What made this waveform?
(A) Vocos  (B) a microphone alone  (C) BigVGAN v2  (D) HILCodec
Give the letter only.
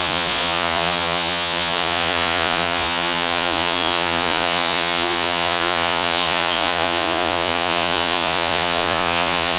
A